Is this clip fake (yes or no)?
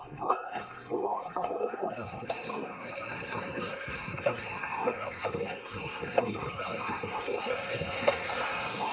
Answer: yes